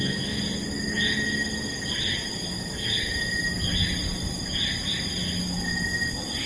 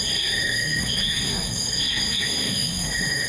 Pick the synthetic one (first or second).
second